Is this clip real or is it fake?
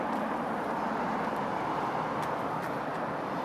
real